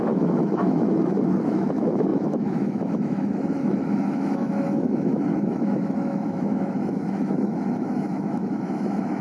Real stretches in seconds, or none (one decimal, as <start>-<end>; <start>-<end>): none